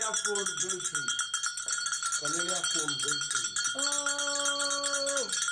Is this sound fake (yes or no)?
no